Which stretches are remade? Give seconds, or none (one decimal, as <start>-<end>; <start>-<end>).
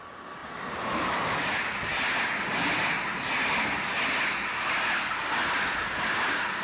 none